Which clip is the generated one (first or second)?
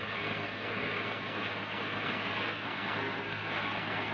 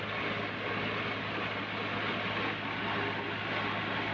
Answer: first